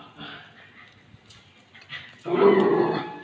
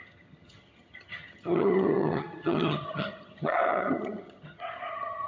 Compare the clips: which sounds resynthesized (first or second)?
second